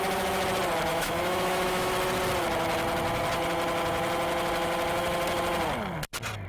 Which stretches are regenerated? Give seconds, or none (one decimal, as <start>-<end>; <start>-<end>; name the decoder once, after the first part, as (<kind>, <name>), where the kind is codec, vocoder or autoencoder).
0.9-1.9 (autoencoder, DAC-VAE)

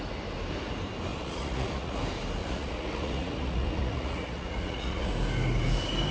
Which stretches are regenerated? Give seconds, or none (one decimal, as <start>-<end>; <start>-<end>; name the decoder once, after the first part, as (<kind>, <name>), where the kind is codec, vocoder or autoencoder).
1.1-2.0 (vocoder, Vocos); 2.4-5.1

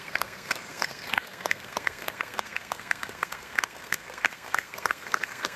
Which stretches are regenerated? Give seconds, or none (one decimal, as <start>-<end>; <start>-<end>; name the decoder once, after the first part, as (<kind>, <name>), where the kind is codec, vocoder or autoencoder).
0.0-5.6 (codec, SNAC)

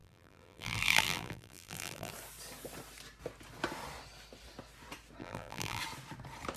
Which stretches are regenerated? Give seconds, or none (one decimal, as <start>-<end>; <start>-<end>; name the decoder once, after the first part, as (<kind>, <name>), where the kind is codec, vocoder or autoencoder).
0.0-2.1 (vocoder, BigVGAN v2); 5.2-5.8

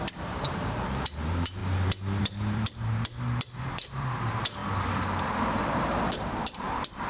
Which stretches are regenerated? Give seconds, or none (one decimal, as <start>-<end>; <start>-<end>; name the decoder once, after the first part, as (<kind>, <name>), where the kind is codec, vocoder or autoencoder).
0.0-4.6 (vocoder, BigVGAN v2); 5.2-7.1

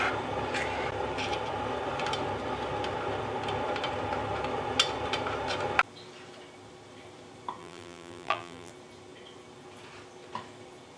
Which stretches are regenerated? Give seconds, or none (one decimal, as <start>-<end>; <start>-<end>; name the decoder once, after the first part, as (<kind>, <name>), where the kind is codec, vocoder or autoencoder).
7.6-8.7 (vocoder, BigVGAN v2)

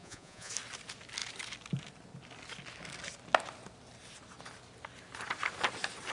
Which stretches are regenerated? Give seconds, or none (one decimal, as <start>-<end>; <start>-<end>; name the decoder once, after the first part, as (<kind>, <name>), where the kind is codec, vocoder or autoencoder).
0.0-0.5 (vocoder, Vocos)

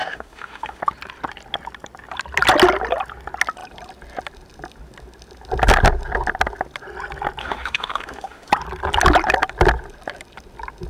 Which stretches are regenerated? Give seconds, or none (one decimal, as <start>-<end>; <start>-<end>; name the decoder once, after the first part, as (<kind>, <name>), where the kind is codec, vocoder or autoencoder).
0.0-0.8 (autoencoder, DAC-VAE); 7.4-8.5